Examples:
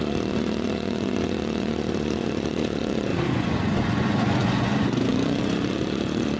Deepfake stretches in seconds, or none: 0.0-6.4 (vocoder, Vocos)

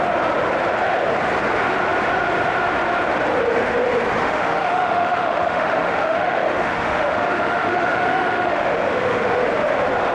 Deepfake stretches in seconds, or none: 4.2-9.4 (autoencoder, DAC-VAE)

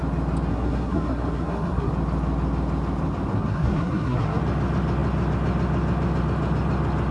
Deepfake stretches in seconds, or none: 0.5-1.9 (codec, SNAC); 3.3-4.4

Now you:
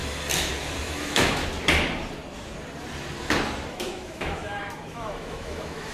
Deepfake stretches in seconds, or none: 0.8-1.4 (autoencoder, DAC-VAE); 3.7-5.9

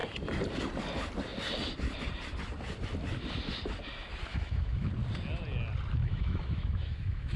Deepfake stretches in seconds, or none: 4.3-4.9 (autoencoder, DAC-VAE); 6.0-7.4

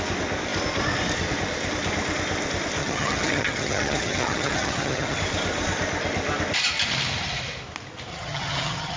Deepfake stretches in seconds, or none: 2.8-5.2 (vocoder, HiFi-GAN); 8.1-9.0